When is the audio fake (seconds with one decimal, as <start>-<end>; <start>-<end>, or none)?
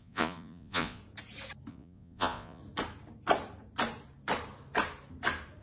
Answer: 0.0-1.0; 1.7-2.6